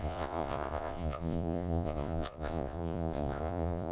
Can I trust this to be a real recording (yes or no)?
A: no